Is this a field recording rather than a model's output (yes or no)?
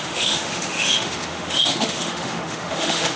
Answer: no